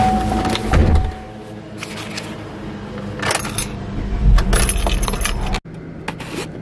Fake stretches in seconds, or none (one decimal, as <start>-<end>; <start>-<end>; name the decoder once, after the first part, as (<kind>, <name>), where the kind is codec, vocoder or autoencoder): none